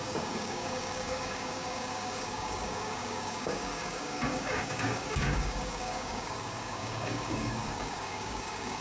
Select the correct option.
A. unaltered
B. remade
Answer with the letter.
B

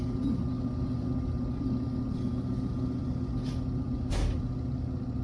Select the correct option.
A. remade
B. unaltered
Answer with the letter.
B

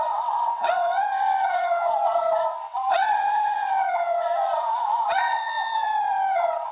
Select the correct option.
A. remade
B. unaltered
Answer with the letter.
A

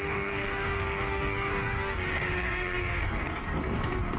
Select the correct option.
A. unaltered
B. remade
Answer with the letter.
B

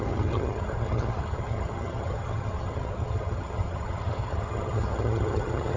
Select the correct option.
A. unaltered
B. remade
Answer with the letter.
B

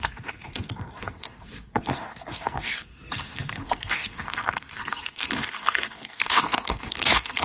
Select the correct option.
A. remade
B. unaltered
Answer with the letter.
A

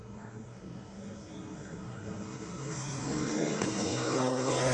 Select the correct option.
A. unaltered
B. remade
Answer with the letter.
B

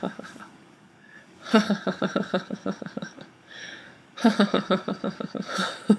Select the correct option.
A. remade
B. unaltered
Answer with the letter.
A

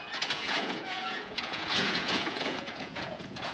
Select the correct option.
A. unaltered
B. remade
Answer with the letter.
B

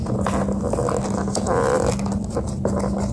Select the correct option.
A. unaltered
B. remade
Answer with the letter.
A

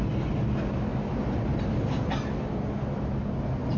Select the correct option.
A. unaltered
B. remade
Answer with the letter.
A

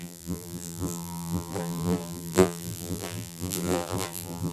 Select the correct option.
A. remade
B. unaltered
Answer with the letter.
A